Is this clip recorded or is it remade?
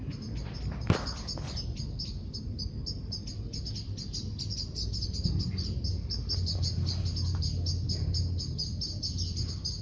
recorded